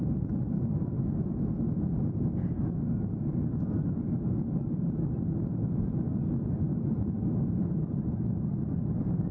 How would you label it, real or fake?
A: real